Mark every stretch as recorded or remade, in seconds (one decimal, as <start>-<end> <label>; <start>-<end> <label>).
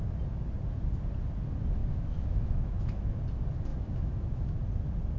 0.0-1.8 recorded; 1.8-3.2 remade; 3.2-3.7 recorded; 3.7-4.6 remade; 4.6-5.2 recorded